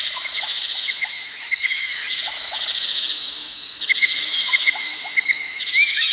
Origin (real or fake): fake